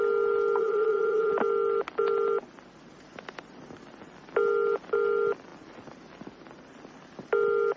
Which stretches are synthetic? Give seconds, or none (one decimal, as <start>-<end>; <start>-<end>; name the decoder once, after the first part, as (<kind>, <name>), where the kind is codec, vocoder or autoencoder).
0.6-1.3 (vocoder, Vocos)